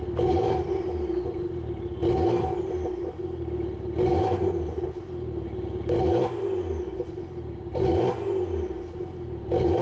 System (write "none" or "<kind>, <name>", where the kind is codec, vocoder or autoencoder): none